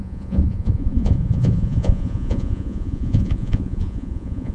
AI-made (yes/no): yes